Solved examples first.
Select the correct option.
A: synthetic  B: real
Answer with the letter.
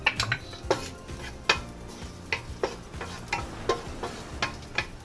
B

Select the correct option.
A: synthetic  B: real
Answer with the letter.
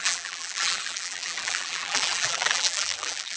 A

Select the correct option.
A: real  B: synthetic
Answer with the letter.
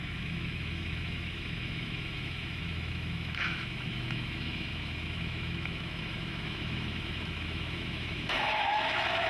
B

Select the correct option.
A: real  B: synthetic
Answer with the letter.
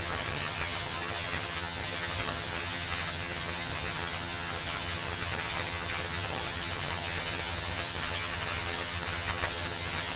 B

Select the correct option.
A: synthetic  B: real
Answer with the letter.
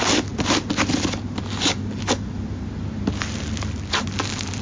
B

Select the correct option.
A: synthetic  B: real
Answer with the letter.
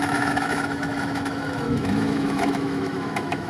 A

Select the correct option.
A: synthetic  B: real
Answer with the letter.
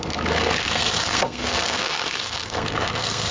A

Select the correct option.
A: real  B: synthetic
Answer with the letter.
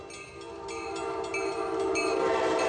A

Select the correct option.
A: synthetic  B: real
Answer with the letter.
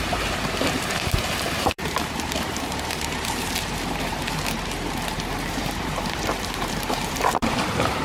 A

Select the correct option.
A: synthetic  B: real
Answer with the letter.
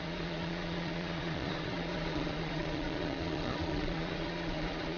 A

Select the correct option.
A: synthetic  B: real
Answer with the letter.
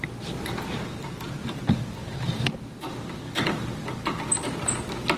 B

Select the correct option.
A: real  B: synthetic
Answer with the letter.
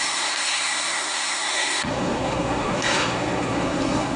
B